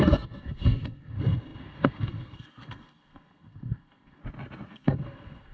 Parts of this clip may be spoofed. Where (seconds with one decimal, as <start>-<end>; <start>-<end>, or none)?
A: 0.0-4.2; 4.7-5.5